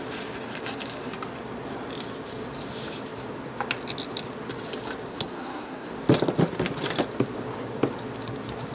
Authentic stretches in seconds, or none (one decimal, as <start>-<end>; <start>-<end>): 0.0-5.1; 5.9-8.7